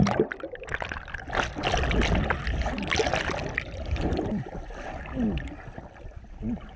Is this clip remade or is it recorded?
recorded